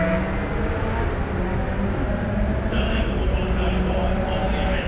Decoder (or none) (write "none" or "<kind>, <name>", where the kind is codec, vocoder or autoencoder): none